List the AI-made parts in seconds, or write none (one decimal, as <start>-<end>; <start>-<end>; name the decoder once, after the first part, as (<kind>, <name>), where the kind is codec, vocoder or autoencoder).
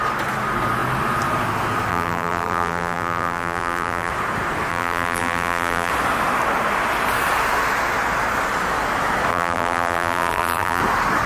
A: 1.9-4.1 (vocoder, BigVGAN v2); 4.7-5.9; 9.3-10.8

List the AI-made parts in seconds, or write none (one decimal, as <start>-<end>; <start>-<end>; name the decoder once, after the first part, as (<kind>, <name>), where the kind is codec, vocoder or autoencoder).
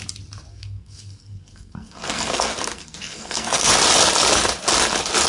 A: 0.5-3.7 (codec, SNAC)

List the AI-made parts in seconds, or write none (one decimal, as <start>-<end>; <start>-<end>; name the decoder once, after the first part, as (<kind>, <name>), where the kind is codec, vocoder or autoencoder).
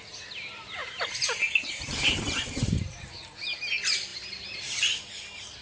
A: 0.8-3.6 (vocoder, BigVGAN v2)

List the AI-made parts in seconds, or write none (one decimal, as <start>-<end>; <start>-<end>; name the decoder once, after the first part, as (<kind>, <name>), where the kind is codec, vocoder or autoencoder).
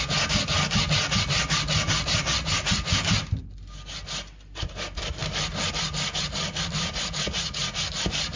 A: none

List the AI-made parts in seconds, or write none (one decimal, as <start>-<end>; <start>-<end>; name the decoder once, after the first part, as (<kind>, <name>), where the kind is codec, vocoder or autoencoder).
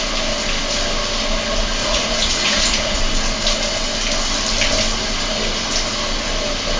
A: 1.8-3.0 (vocoder, Vocos)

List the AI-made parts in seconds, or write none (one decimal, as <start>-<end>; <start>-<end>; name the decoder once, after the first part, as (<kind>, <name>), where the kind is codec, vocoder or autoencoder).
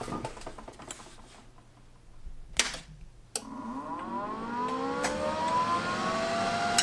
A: none